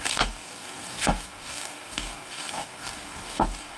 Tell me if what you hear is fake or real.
fake